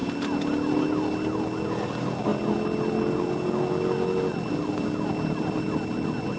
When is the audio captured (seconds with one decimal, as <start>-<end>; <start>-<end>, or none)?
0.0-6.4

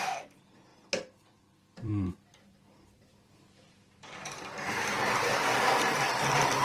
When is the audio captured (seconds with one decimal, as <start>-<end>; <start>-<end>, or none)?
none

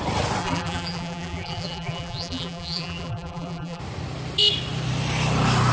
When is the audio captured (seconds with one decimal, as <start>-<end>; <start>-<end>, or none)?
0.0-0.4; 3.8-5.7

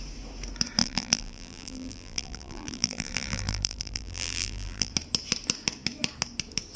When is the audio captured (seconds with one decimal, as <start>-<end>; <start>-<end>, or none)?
0.0-0.8; 4.9-6.8